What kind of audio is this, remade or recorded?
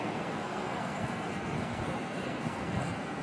remade